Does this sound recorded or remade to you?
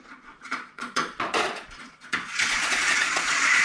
remade